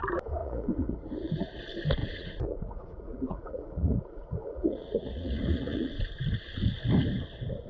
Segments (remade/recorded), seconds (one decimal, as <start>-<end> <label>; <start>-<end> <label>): 0.0-0.4 recorded; 0.4-1.6 remade; 1.6-2.0 recorded; 2.0-5.9 remade; 5.9-7.7 recorded